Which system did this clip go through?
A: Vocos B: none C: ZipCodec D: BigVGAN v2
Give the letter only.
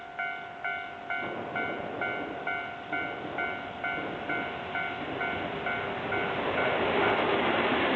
B